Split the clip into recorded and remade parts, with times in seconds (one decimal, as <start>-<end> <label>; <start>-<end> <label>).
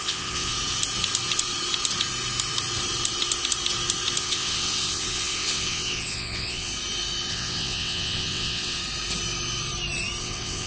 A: 0.0-0.5 remade; 0.5-4.2 recorded; 4.2-6.7 remade; 6.7-7.3 recorded; 7.3-8.8 remade; 8.8-10.2 recorded; 10.2-10.7 remade